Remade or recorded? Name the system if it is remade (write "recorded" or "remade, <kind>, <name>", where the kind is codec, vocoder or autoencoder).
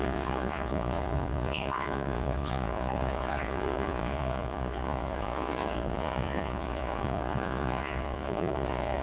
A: remade, vocoder, Vocos